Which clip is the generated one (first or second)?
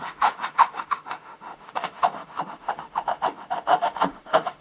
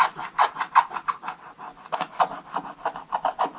first